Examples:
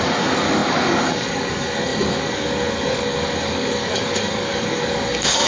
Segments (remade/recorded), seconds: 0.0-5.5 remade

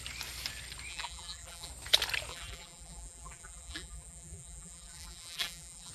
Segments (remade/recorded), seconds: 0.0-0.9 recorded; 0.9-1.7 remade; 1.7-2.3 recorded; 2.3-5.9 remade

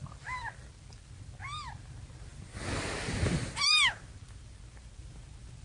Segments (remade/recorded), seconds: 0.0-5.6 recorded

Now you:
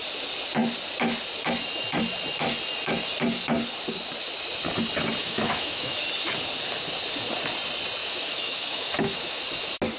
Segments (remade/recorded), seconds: 0.0-5.2 recorded; 5.2-6.0 remade; 6.0-8.0 recorded; 8.0-9.4 remade; 9.4-10.0 recorded

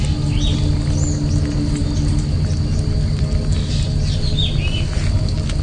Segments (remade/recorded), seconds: 0.0-5.6 recorded

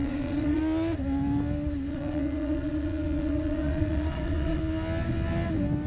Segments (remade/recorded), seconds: 0.0-0.6 remade; 0.6-1.9 recorded; 1.9-4.6 remade; 4.6-5.9 recorded